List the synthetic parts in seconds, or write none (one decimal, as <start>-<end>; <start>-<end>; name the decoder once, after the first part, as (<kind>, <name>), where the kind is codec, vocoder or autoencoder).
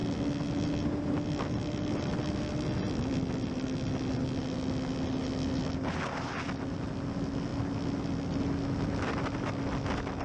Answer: none